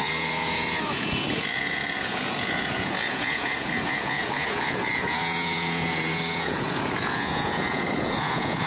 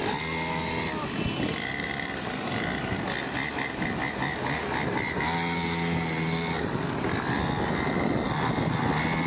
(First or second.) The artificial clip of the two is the first